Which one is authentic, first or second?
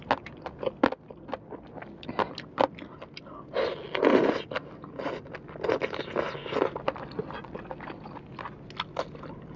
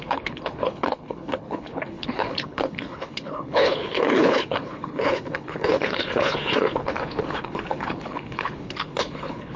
first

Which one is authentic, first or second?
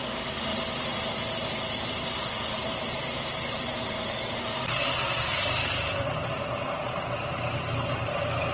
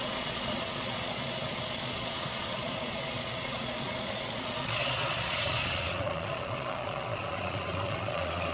first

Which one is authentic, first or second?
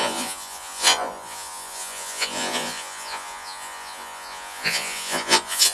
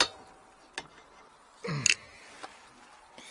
second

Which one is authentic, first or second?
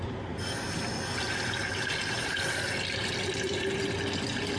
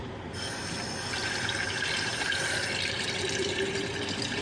first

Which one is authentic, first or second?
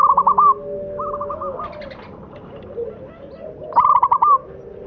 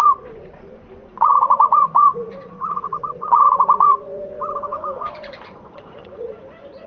first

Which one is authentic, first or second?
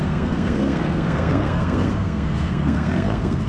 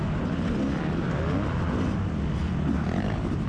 second